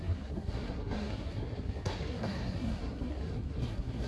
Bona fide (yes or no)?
no